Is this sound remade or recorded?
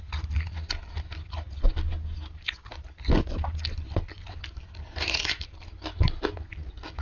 recorded